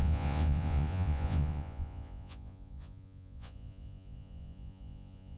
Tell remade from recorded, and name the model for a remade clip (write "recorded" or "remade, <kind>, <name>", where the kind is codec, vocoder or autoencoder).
remade, vocoder, Vocos